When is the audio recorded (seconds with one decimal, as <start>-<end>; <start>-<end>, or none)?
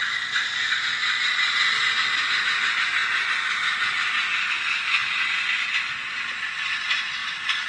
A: 0.0-7.7